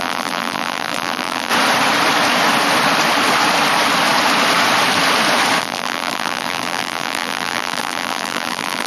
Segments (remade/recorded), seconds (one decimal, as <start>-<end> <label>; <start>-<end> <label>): 0.0-1.5 remade; 1.5-5.6 recorded; 5.6-8.9 remade